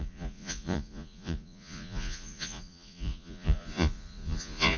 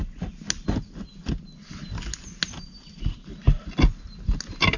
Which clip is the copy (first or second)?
first